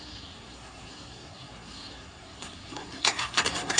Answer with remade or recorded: remade